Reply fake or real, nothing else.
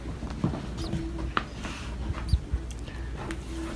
real